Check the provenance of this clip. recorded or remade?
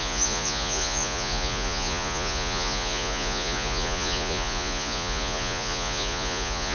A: remade